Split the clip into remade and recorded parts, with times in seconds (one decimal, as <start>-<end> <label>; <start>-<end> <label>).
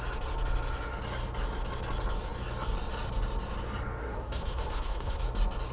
0.0-4.0 recorded; 4.0-5.2 remade; 5.2-5.7 recorded